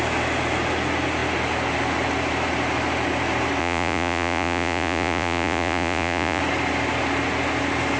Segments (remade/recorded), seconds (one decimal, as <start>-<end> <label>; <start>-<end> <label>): 0.0-3.6 recorded; 3.6-6.4 remade; 6.4-8.0 recorded